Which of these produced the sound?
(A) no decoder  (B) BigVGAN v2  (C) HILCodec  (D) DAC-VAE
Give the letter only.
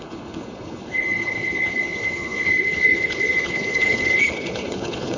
C